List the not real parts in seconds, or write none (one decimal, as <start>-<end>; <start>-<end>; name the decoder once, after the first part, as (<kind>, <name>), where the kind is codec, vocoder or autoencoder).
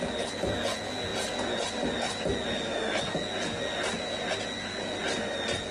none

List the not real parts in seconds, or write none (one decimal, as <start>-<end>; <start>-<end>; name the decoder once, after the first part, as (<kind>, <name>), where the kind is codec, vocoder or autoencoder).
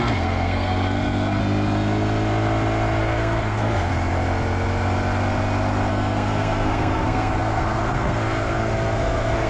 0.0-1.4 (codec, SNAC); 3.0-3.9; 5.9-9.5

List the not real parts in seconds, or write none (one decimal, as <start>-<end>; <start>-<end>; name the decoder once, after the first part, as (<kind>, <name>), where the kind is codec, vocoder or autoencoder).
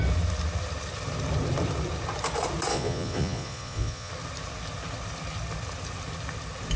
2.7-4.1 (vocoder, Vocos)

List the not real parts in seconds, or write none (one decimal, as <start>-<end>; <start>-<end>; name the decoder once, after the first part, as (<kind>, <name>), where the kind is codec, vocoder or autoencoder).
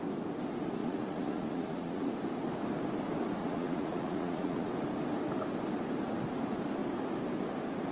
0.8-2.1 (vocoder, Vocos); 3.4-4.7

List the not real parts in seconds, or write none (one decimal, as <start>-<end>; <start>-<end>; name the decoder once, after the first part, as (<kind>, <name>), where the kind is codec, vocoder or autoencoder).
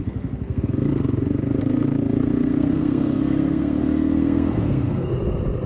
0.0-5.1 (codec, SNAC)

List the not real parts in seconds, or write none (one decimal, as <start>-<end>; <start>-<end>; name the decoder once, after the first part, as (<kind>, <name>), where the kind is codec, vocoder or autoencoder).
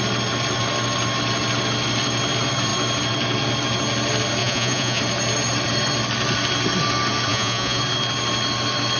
4.4-5.0 (vocoder, Vocos); 7.3-7.8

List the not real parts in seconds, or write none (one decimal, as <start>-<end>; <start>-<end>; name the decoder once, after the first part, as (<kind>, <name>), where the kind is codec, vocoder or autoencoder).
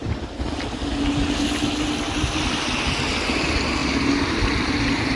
none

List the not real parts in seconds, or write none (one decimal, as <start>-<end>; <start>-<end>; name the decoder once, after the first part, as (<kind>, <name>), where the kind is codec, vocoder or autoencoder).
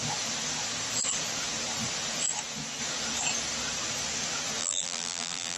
4.6-5.6 (vocoder, BigVGAN v2)